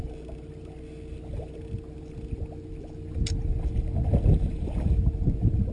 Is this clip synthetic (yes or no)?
no